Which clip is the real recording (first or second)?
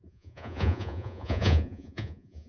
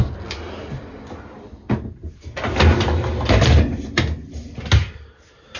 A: second